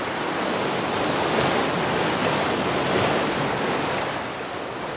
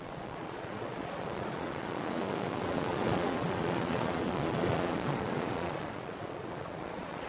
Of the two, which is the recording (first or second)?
first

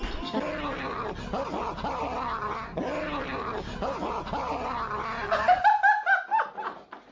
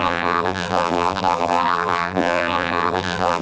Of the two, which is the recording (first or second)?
first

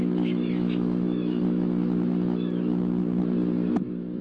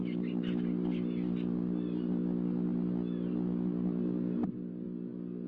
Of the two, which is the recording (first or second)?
second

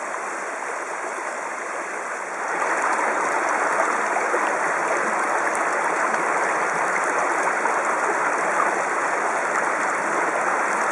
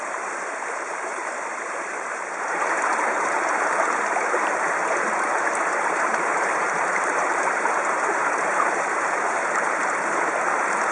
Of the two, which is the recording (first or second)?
first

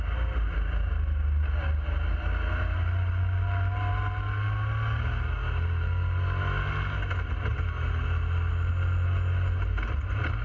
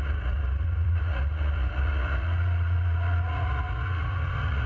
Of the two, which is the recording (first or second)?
first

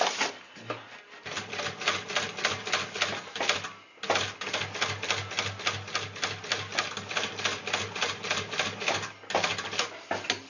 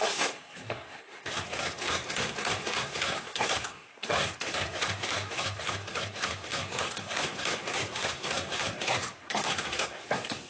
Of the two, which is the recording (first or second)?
first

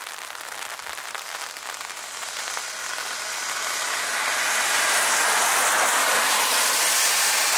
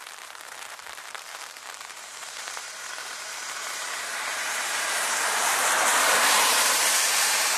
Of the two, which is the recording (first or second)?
first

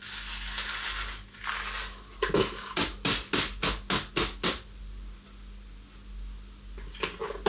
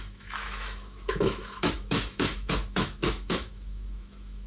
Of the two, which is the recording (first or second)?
first